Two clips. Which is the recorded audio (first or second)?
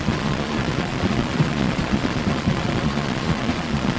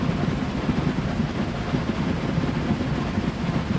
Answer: second